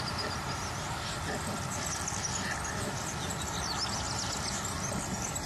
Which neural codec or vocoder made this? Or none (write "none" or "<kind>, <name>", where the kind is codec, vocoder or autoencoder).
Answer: none